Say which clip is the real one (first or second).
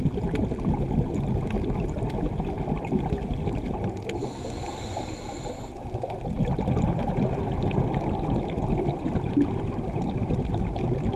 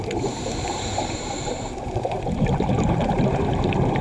first